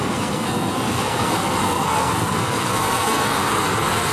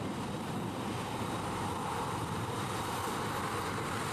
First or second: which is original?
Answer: second